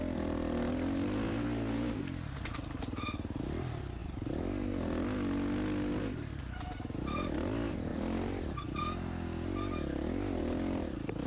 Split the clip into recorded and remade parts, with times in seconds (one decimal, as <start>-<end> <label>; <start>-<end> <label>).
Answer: 0.0-11.3 recorded